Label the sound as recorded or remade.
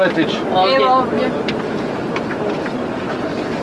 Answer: recorded